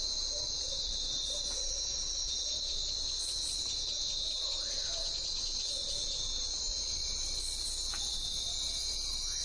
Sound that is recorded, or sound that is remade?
recorded